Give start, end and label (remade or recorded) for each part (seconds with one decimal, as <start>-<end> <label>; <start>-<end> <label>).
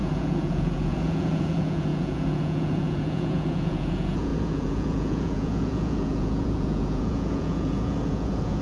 0.0-8.6 remade